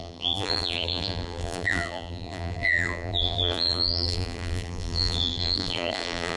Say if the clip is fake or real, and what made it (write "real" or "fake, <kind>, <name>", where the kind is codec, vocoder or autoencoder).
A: fake, vocoder, BigVGAN v2